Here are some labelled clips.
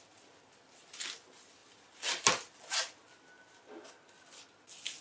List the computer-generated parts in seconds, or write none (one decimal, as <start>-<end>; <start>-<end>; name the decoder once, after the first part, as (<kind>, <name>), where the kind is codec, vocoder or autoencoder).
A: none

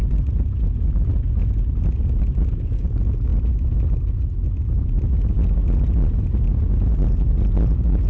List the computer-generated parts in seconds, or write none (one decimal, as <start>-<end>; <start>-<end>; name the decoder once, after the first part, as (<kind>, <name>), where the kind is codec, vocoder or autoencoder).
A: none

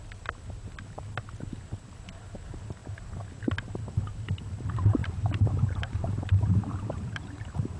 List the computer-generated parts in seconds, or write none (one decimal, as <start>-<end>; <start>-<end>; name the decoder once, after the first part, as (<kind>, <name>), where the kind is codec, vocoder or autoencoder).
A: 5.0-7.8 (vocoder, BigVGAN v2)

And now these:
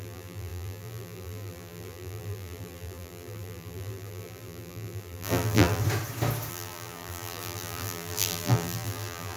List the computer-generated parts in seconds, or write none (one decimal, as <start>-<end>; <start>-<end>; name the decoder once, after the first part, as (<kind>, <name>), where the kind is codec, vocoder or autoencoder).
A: 0.0-5.8 (vocoder, BigVGAN v2); 6.5-9.4

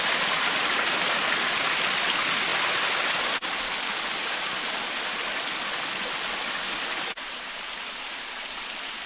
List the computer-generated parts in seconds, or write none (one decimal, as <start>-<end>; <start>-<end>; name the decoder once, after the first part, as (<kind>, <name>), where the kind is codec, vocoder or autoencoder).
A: none

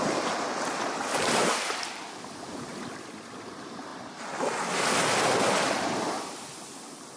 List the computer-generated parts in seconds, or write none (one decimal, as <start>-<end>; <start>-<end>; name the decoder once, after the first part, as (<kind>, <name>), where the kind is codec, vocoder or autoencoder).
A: 0.0-1.4 (vocoder, BigVGAN v2); 2.5-3.9; 5.6-7.2